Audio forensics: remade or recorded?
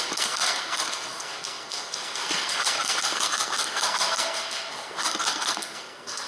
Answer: remade